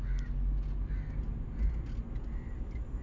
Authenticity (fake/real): real